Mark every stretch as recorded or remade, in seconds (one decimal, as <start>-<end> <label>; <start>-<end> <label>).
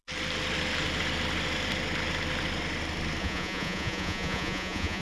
0.0-3.2 recorded; 3.2-5.0 remade